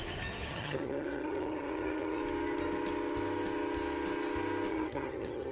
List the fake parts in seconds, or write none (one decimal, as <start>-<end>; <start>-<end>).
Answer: 0.5-2.2; 4.7-5.5